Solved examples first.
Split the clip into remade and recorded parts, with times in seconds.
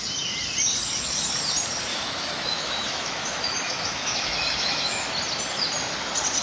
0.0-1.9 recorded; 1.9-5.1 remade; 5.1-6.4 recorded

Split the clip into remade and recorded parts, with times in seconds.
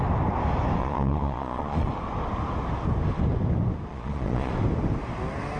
0.0-0.8 recorded; 0.8-1.9 remade; 1.9-3.9 recorded; 3.9-4.5 remade; 4.5-5.6 recorded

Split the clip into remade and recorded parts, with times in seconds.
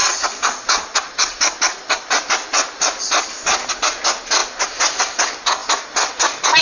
0.0-6.6 recorded